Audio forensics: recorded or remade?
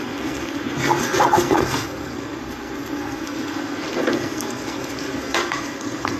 remade